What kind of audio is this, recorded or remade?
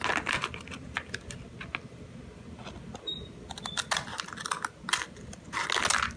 recorded